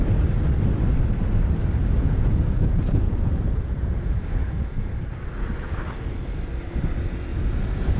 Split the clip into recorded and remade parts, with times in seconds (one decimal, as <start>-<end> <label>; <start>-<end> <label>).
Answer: 0.0-1.8 recorded; 1.8-4.9 remade; 4.9-7.3 recorded; 7.3-8.0 remade